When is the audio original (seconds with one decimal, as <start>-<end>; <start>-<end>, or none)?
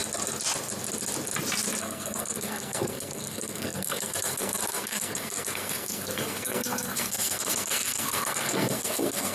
0.0-1.8